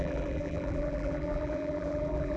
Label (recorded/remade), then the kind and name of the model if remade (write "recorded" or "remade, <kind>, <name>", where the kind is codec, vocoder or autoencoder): remade, vocoder, BigVGAN v2